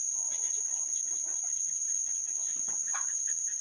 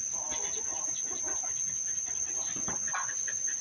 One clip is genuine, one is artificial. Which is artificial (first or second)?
first